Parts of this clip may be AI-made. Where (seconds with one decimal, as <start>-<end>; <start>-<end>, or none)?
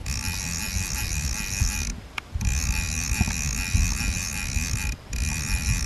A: none